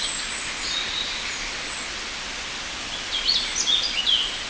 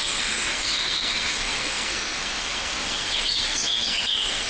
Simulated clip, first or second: second